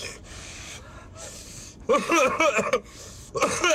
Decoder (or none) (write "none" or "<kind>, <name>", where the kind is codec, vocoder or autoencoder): codec, DAC